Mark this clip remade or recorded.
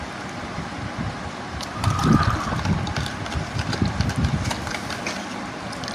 remade